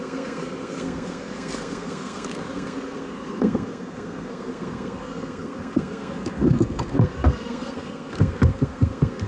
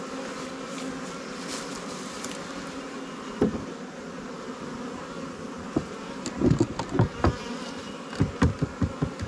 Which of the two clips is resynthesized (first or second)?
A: first